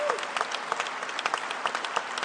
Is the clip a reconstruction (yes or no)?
no